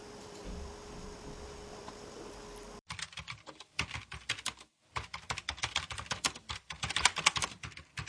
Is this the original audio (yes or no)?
no